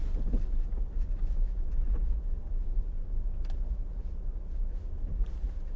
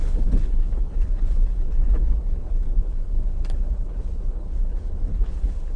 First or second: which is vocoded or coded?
second